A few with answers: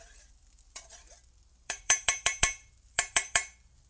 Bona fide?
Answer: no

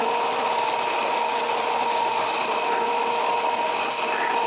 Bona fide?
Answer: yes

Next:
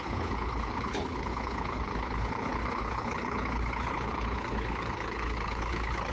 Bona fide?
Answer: no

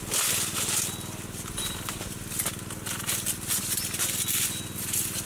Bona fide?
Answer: yes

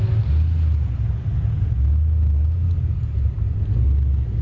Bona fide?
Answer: yes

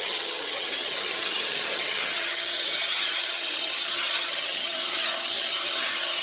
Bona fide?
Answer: no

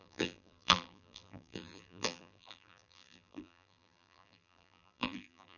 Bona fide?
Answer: no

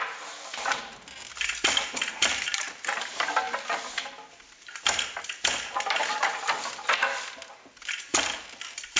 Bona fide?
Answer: yes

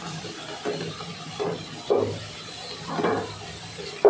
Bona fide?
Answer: yes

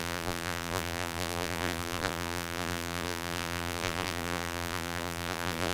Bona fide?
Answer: no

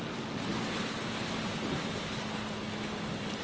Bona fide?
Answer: yes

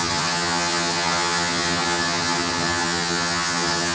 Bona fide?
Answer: no